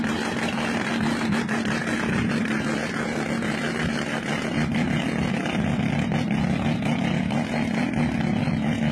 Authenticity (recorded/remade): recorded